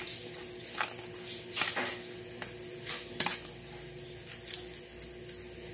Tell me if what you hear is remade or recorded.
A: recorded